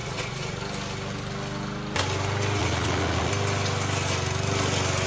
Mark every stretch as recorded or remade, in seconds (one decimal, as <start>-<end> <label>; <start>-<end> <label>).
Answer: 0.0-0.6 remade; 0.6-2.6 recorded; 2.6-3.3 remade; 3.3-5.1 recorded